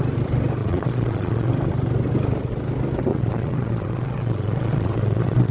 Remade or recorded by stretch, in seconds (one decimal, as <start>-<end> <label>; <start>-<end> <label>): 0.0-0.6 recorded; 0.6-1.5 remade; 1.5-3.1 recorded; 3.1-5.5 remade